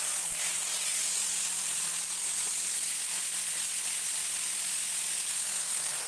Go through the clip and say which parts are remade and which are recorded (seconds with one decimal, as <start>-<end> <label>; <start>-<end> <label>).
0.0-5.3 recorded; 5.3-6.1 remade